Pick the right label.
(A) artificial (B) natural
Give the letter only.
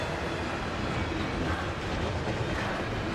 B